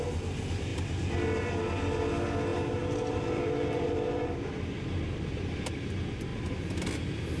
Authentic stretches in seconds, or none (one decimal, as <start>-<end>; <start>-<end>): 0.0-2.5; 4.5-7.4